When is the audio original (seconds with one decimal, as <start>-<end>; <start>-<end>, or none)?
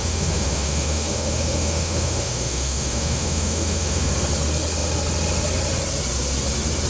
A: 4.1-6.9